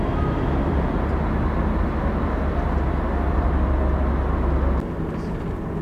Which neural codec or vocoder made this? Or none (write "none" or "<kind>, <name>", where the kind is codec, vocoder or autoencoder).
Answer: none